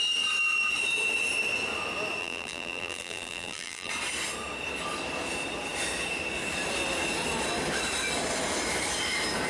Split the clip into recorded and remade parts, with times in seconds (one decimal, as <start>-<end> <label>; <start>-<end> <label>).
0.0-2.2 recorded; 2.2-3.9 remade; 3.9-9.5 recorded